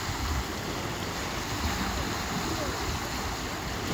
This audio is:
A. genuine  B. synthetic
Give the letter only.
A